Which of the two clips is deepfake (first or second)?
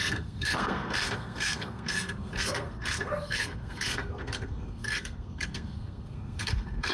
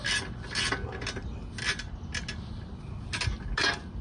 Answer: first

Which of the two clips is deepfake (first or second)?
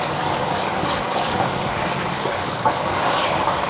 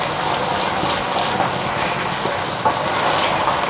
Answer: first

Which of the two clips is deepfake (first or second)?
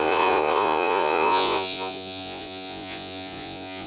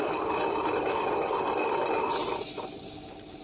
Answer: first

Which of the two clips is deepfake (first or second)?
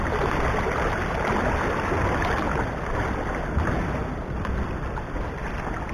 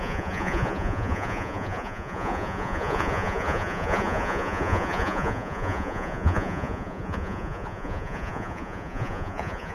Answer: second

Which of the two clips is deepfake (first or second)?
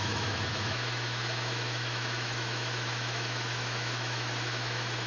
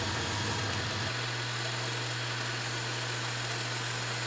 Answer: first